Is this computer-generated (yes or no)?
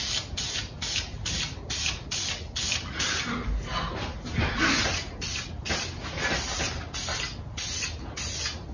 no